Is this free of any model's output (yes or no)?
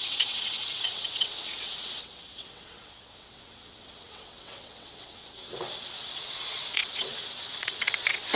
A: no